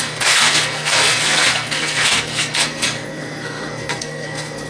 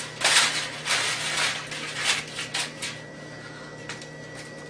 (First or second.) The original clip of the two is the second